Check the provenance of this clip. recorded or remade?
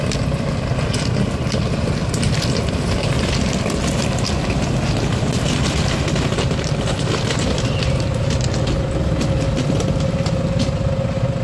recorded